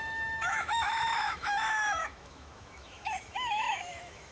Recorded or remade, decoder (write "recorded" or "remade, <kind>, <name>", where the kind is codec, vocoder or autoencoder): remade, autoencoder, DAC-VAE